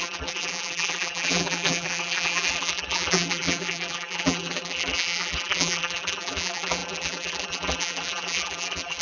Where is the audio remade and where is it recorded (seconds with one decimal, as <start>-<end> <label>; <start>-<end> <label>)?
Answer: 0.0-9.0 remade